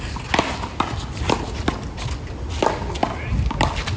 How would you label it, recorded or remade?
recorded